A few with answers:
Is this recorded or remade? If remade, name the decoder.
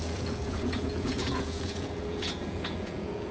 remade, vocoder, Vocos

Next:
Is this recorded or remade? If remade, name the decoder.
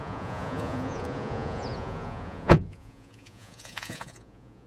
remade, vocoder, Vocos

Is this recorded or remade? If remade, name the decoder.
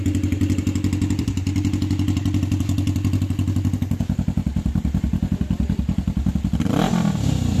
recorded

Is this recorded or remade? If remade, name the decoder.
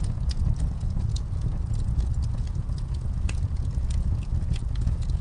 remade, vocoder, Vocos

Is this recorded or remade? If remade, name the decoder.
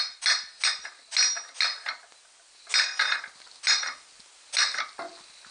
recorded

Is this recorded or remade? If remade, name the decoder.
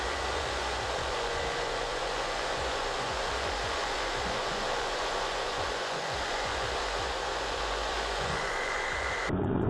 remade, vocoder, Vocos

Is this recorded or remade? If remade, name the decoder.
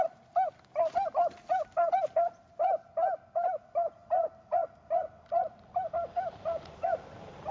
recorded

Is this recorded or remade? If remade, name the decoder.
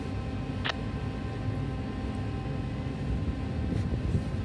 recorded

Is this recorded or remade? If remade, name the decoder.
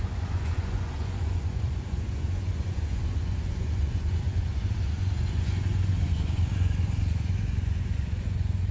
remade, vocoder, Vocos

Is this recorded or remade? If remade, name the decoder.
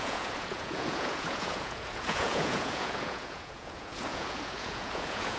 remade, vocoder, Vocos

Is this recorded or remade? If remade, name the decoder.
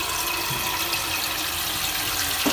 recorded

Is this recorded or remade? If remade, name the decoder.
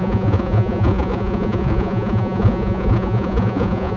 remade, vocoder, Vocos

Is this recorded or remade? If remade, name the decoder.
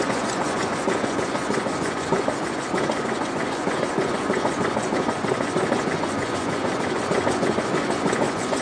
remade, vocoder, Vocos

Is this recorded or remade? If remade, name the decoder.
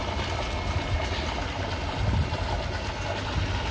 recorded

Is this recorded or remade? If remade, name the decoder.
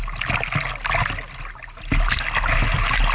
recorded